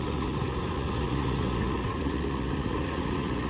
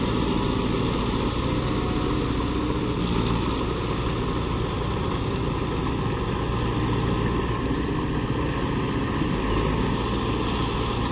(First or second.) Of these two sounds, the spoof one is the first